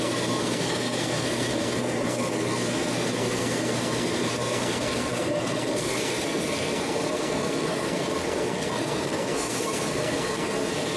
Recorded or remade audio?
remade